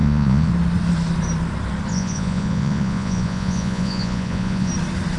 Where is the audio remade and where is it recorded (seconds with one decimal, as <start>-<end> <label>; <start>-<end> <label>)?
0.0-0.5 remade; 0.5-1.9 recorded; 1.9-4.7 remade; 4.7-5.2 recorded